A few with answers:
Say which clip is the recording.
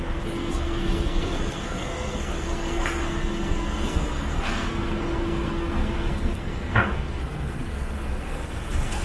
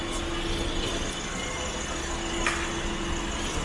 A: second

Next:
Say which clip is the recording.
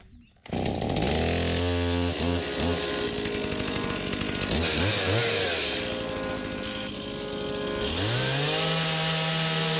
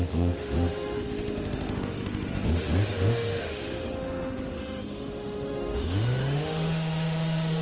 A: first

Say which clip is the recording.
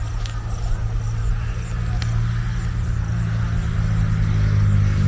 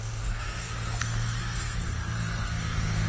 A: first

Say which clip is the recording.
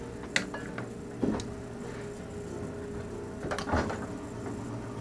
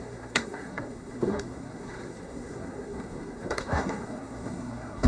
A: first